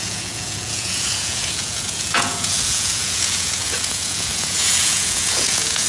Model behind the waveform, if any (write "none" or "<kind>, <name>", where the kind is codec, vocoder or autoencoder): vocoder, Vocos